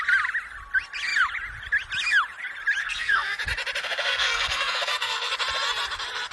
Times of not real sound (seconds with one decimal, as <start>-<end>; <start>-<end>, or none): 2.8-3.4; 3.8-5.3